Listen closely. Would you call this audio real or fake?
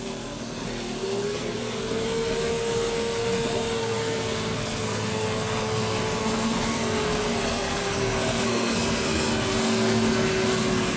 fake